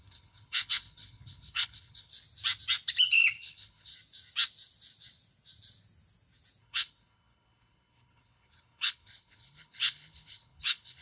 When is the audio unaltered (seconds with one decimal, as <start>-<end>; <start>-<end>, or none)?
2.1-3.1; 3.9-6.6